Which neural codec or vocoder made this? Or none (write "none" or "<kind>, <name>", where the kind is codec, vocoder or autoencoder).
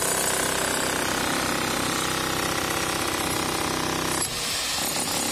none